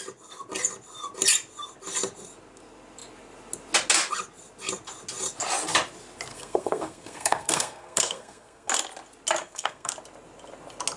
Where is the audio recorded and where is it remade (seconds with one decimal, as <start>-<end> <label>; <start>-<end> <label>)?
0.0-6.3 recorded; 6.3-8.7 remade; 8.7-9.4 recorded; 9.4-9.9 remade; 9.9-11.0 recorded